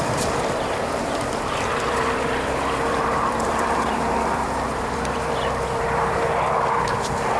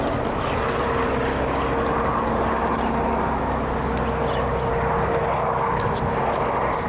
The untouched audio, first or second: second